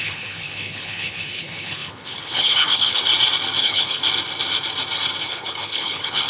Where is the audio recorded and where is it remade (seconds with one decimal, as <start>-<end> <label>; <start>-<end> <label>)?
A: 0.0-3.1 remade; 3.1-3.6 recorded; 3.6-4.0 remade; 4.0-5.2 recorded; 5.2-6.3 remade